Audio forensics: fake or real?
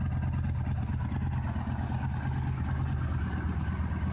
real